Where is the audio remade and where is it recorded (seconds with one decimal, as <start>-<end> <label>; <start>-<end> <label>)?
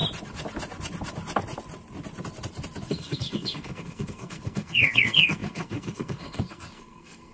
0.0-2.9 recorded; 2.9-7.3 remade